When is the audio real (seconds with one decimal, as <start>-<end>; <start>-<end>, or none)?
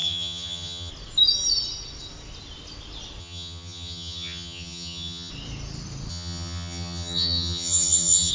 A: 0.9-3.2; 5.3-6.1